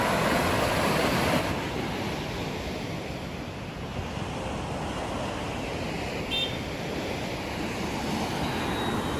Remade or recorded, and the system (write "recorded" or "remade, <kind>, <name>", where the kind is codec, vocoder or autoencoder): recorded